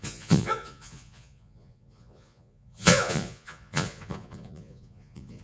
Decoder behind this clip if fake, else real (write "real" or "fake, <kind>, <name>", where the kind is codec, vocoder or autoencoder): fake, vocoder, Vocos